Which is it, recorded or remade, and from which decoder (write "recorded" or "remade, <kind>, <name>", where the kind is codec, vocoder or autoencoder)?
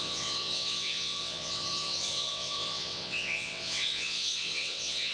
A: remade, vocoder, WaveNeXt